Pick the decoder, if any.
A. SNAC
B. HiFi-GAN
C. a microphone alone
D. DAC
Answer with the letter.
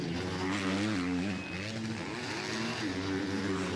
C